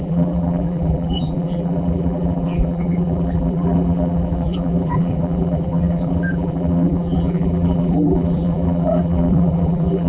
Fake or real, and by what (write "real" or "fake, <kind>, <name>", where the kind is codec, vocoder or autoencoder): fake, vocoder, BigVGAN v2